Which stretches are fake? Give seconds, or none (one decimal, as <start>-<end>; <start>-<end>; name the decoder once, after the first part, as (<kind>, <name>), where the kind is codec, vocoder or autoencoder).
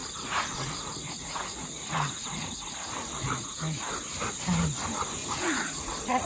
0.0-3.8 (vocoder, Vocos); 5.2-6.3